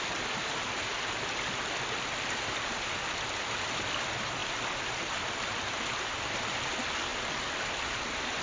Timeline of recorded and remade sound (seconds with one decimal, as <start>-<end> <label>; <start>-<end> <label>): 0.0-8.4 recorded